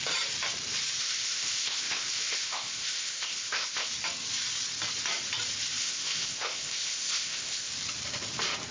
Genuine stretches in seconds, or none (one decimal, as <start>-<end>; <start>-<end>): 0.0-1.0; 3.9-5.8; 7.7-8.7